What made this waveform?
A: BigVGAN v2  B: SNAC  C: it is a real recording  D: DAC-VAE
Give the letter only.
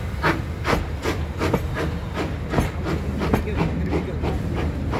C